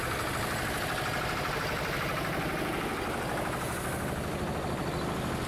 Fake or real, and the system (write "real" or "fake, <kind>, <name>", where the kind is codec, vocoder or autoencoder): real